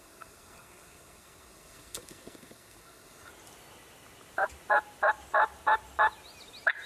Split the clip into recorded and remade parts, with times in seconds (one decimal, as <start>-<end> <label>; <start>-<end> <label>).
0.0-3.3 remade; 3.3-6.9 recorded

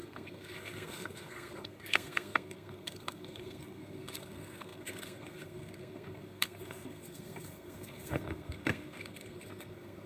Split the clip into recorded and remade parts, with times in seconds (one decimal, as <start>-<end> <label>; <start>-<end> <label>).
0.0-10.1 remade

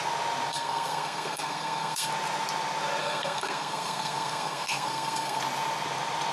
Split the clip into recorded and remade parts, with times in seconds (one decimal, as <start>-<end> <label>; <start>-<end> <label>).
0.0-0.5 recorded; 0.5-2.1 remade; 2.1-3.0 recorded; 3.0-5.4 remade; 5.4-6.3 recorded

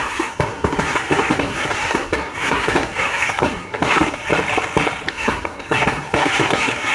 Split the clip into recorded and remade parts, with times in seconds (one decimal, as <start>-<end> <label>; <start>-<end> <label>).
0.0-4.3 remade; 4.3-5.1 recorded; 5.1-6.9 remade